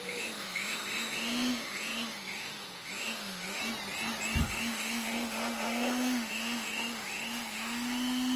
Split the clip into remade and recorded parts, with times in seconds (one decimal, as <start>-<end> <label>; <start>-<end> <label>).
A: 0.0-3.6 remade; 3.6-4.4 recorded; 4.4-8.4 remade